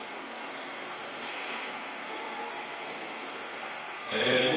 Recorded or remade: remade